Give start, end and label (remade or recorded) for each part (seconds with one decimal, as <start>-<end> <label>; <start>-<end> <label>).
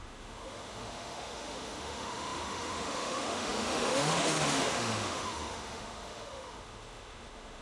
0.0-7.6 remade